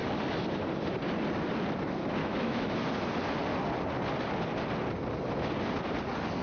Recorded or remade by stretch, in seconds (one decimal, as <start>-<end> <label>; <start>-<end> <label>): 0.0-2.2 recorded; 2.2-2.8 remade; 2.8-6.4 recorded